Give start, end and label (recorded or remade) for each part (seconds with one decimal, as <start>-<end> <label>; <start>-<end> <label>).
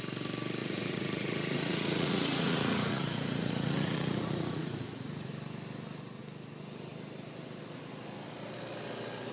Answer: 0.0-0.6 recorded; 0.6-5.3 remade; 5.3-9.3 recorded